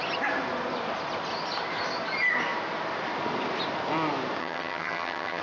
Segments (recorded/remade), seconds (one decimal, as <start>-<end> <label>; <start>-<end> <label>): 0.0-4.4 recorded; 4.4-5.4 remade